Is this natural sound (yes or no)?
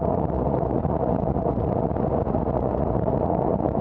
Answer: no